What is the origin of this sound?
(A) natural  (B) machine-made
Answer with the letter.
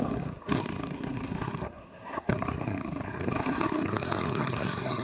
B